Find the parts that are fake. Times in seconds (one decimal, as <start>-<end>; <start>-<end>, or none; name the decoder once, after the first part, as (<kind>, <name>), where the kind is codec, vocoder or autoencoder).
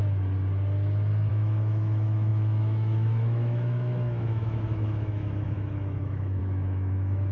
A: 1.3-7.3 (autoencoder, DAC-VAE)